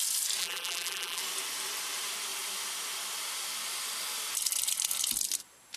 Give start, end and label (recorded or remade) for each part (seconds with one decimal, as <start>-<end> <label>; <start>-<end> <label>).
0.0-0.4 recorded; 0.4-1.2 remade; 1.2-5.8 recorded